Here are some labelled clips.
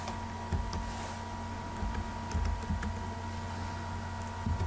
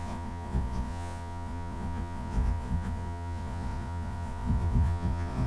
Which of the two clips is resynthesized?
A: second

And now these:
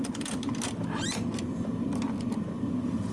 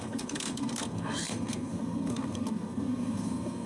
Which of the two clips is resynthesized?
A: second